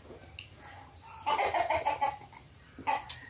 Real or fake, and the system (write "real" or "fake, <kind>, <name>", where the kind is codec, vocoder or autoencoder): real